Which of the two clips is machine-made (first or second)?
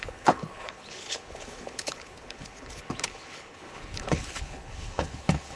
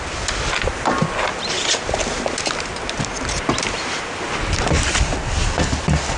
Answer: first